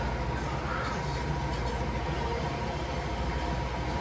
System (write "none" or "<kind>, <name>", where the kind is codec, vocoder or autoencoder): none